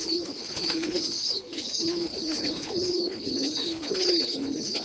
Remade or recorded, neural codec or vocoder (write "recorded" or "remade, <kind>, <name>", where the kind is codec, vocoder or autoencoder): remade, codec, HILCodec